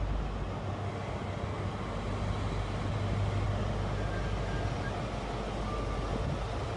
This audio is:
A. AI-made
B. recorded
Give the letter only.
B